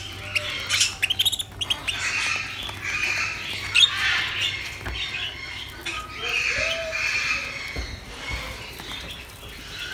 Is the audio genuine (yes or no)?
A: yes